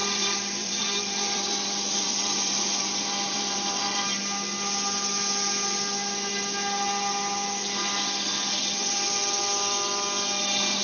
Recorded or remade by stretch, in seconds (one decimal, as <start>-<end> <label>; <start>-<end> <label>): 0.0-4.2 remade; 4.2-10.8 recorded